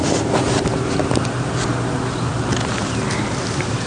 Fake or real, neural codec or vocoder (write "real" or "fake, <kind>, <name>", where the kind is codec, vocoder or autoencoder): real